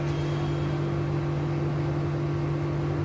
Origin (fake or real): real